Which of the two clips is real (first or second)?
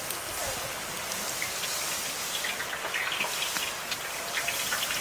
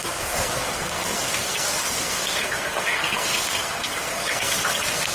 first